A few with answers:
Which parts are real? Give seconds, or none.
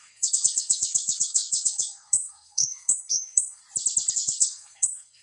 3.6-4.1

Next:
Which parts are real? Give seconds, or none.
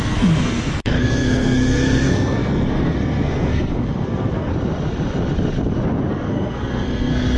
4.5-6.1